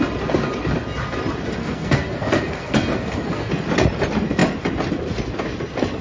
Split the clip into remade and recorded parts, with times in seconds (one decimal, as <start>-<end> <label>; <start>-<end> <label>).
0.0-1.6 recorded; 1.6-3.5 remade; 3.5-6.0 recorded